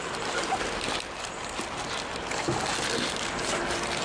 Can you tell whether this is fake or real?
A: real